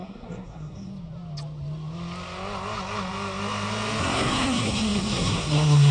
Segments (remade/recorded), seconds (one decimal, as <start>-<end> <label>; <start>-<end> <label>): 0.0-0.9 remade; 0.9-4.0 recorded; 4.0-5.9 remade